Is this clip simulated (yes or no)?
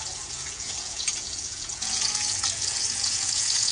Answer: yes